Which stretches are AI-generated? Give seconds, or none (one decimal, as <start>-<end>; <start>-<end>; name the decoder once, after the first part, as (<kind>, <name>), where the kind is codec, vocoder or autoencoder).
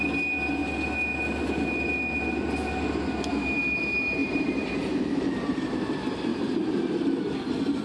4.2-5.8 (vocoder, BigVGAN v2); 6.3-6.9